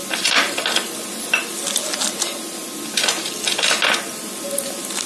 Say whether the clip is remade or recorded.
recorded